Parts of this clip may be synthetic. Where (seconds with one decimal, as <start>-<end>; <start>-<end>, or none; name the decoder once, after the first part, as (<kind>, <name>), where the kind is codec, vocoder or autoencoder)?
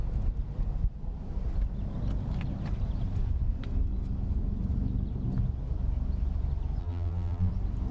6.8-7.5 (vocoder, BigVGAN v2)